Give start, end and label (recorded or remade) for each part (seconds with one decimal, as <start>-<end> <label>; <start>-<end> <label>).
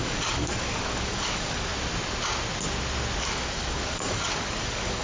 0.0-1.7 remade; 1.7-3.2 recorded; 3.2-5.0 remade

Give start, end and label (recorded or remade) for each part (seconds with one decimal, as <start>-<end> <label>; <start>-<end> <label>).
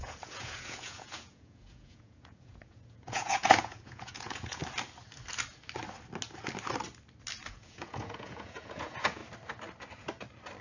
0.0-4.6 remade; 4.6-7.5 recorded; 7.5-9.2 remade; 9.2-10.6 recorded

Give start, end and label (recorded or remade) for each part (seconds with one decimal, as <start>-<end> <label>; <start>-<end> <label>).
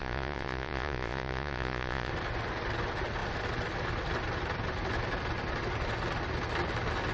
0.0-2.1 remade; 2.1-7.1 recorded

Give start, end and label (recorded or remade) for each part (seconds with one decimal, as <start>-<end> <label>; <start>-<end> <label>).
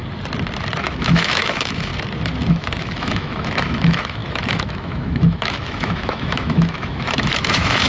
0.0-0.8 recorded; 0.8-1.9 remade; 1.9-2.5 recorded; 2.5-7.9 remade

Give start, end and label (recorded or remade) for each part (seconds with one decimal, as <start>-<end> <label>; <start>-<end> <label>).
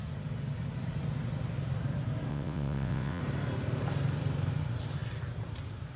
0.0-2.3 recorded; 2.3-3.2 remade; 3.2-6.0 recorded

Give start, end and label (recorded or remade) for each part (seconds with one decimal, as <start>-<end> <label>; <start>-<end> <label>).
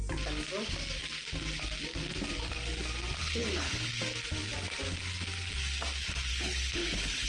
0.0-3.2 recorded; 3.2-3.9 remade; 3.9-6.3 recorded; 6.3-7.3 remade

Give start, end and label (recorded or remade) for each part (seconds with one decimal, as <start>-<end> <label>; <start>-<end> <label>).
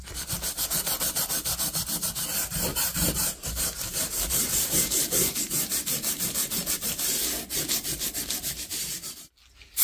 0.0-2.7 recorded; 2.7-5.4 remade; 5.4-7.9 recorded; 7.9-8.7 remade; 8.7-9.8 recorded